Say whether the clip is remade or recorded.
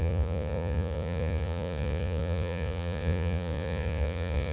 remade